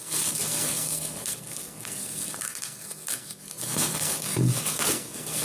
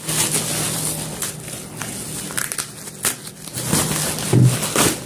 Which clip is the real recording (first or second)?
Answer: second